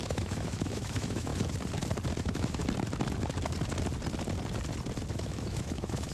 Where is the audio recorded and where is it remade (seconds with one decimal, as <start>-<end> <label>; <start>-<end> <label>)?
0.0-1.3 remade; 1.3-2.2 recorded; 2.2-2.6 remade; 2.6-5.1 recorded; 5.1-6.1 remade